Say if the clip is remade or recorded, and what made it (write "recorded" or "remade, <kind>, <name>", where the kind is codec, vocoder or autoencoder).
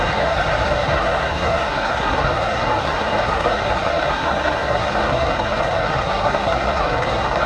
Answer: remade, codec, SNAC